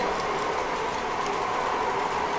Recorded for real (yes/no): yes